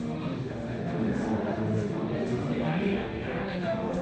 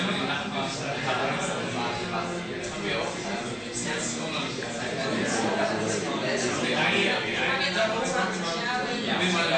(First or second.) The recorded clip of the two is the second